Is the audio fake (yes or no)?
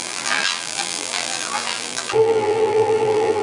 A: yes